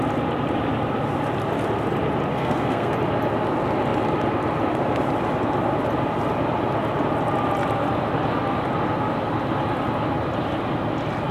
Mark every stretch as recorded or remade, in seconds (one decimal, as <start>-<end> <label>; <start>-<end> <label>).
0.0-2.3 recorded; 2.3-2.9 remade; 2.9-11.3 recorded